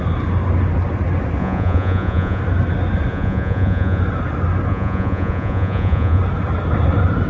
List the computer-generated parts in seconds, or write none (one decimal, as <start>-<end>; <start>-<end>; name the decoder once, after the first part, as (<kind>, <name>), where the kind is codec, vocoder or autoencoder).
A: 1.4-2.4 (vocoder, Vocos); 3.1-4.0; 4.7-6.2